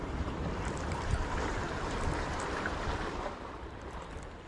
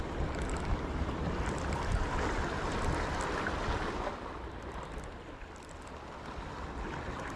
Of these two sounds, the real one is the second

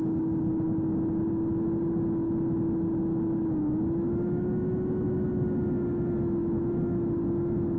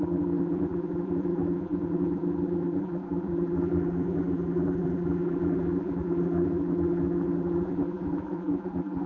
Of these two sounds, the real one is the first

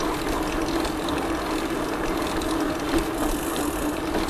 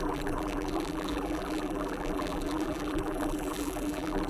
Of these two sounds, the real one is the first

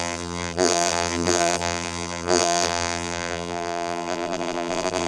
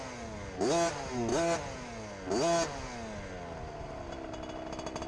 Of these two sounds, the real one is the second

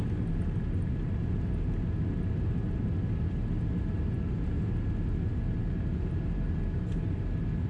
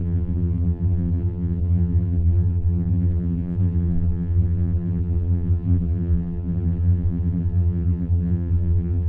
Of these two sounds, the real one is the first